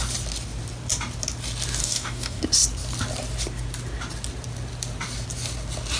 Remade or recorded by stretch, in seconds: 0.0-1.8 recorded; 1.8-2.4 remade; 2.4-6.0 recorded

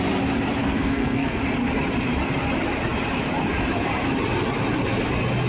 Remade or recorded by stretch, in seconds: 0.0-0.6 recorded; 0.6-1.4 remade; 1.4-5.5 recorded

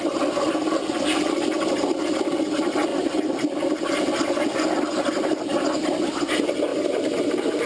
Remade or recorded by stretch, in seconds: 0.0-6.7 recorded; 6.7-7.7 remade

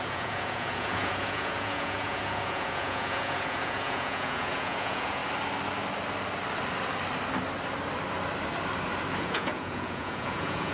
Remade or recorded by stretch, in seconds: 0.0-5.2 remade; 5.2-9.2 recorded; 9.2-10.7 remade

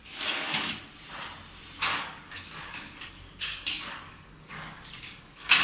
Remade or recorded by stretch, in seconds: 0.0-0.7 remade; 0.7-1.9 recorded; 1.9-5.6 remade

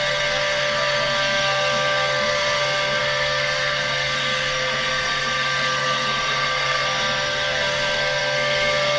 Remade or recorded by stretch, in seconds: 0.0-9.0 remade